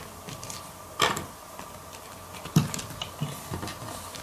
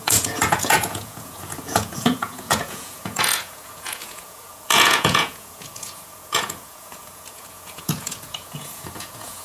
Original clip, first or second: first